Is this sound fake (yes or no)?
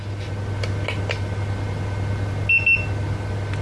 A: no